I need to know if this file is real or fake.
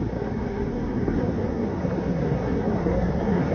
fake